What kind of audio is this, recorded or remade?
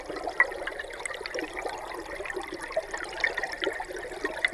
recorded